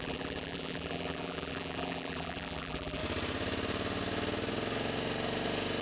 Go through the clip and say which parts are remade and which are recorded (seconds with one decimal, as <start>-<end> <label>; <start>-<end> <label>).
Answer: 0.0-3.0 remade; 3.0-5.8 recorded